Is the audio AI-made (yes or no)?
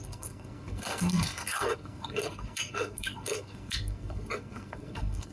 yes